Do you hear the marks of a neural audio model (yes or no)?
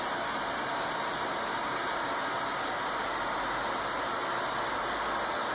no